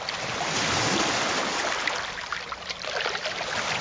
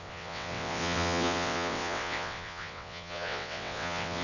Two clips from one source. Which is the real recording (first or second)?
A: first